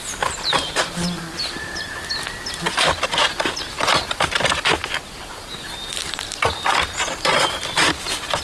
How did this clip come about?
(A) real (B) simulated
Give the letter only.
A